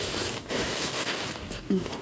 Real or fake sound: fake